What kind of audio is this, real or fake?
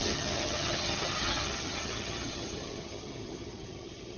fake